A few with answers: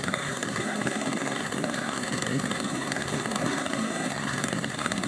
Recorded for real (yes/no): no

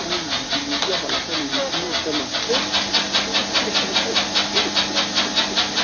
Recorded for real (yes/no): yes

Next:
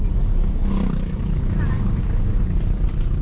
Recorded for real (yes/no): yes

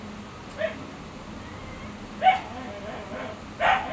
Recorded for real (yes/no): yes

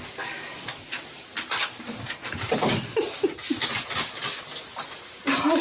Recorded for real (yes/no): yes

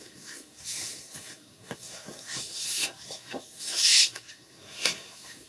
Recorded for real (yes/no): no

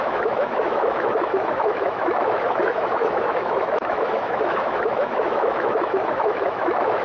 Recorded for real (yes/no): no